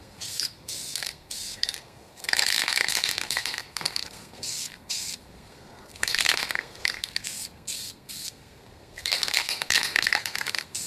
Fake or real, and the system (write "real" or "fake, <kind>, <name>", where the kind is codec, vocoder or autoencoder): fake, codec, SNAC